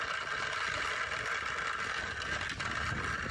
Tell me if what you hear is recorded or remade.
recorded